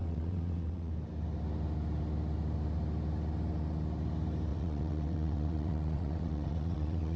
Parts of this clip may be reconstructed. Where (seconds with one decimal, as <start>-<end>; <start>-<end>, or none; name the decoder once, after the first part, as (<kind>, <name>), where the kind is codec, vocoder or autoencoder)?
0.0-0.9 (vocoder, WaveNeXt); 4.5-7.2